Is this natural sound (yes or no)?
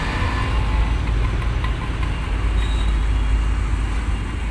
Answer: yes